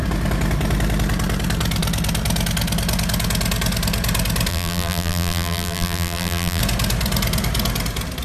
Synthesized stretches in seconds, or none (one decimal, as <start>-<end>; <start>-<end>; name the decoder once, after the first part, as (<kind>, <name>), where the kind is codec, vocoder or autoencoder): 4.5-6.6 (vocoder, BigVGAN v2)